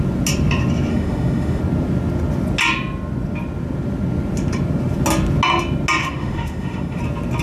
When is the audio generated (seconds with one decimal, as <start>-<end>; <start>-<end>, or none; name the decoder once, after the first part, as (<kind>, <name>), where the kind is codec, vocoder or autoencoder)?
0.9-1.6 (autoencoder, DAC-VAE); 6.0-7.0